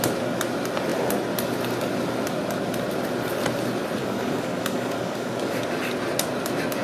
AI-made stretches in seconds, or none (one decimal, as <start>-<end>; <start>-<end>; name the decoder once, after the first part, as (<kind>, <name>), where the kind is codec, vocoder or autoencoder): 4.0-5.6 (codec, DAC)